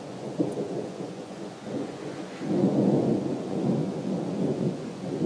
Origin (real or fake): fake